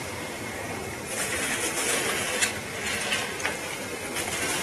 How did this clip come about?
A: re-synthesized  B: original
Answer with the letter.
B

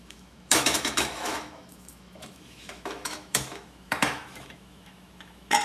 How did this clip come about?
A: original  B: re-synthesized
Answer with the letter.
B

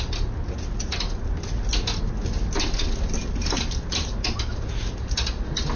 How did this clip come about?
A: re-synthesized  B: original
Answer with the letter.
B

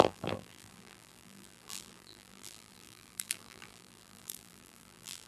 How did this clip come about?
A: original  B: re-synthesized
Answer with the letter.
B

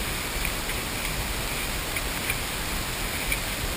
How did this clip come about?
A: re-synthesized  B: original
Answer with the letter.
B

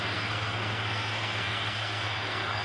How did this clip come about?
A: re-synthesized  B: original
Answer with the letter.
A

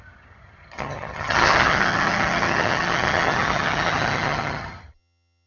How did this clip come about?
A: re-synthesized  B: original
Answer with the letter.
A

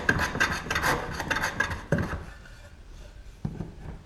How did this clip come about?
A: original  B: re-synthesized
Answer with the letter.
A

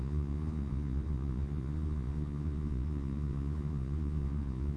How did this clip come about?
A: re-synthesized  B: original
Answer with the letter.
A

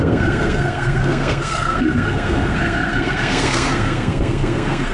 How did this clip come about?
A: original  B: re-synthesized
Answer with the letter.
B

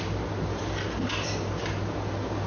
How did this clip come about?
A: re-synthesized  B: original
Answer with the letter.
B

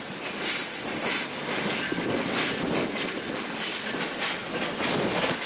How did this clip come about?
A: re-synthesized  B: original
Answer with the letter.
B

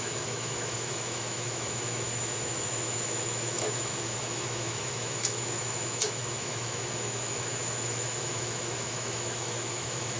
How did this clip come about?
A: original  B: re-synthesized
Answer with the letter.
B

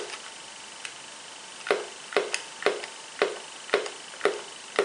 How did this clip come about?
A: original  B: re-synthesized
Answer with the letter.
A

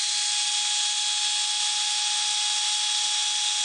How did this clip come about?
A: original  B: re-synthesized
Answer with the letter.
A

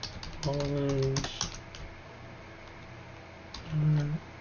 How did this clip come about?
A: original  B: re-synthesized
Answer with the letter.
A